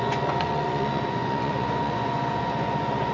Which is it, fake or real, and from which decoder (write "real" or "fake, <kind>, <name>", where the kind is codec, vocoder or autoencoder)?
fake, vocoder, Vocos